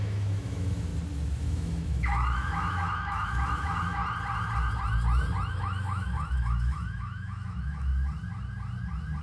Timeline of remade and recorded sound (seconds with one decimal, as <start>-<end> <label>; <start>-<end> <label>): 0.0-0.9 remade; 0.9-1.4 recorded; 1.4-4.0 remade; 4.0-5.5 recorded; 5.5-7.9 remade; 7.9-9.2 recorded